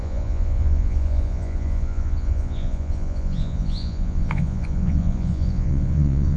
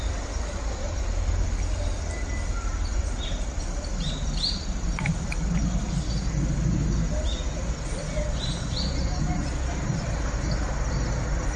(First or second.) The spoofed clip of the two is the first